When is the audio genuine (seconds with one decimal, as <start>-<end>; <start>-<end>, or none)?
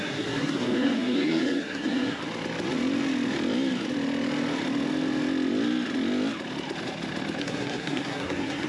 2.2-7.4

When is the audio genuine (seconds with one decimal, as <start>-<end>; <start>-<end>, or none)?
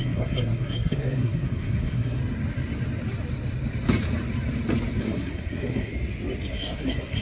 2.2-5.0; 5.9-6.5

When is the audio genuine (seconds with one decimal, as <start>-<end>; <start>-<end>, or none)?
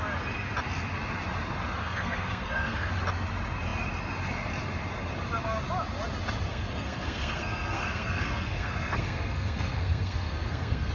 0.0-1.8; 2.9-6.5